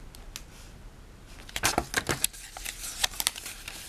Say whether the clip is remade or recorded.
recorded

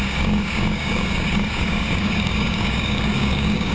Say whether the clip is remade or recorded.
remade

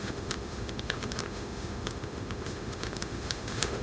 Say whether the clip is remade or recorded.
remade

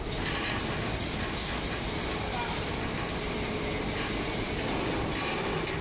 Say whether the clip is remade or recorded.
recorded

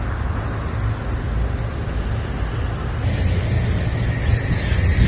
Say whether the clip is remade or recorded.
recorded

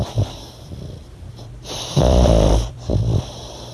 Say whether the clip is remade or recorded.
remade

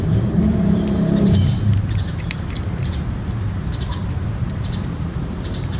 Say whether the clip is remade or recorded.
remade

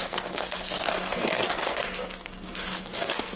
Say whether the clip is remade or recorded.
remade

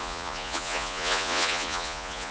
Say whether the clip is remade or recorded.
remade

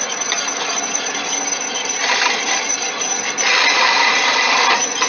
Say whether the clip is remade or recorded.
recorded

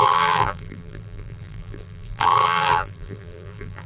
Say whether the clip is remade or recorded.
remade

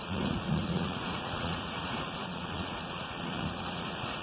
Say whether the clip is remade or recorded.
remade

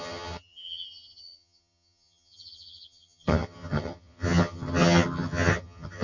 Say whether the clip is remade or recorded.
remade